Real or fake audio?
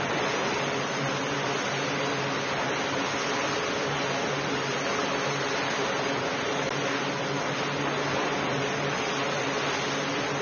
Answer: real